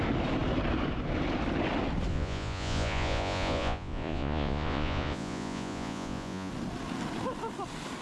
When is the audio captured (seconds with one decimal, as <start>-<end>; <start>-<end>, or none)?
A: 0.0-2.1; 6.5-8.0